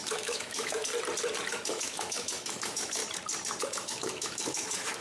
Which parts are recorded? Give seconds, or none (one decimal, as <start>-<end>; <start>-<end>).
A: 0.9-1.5; 3.0-3.6